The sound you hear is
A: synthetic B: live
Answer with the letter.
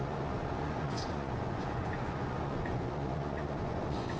A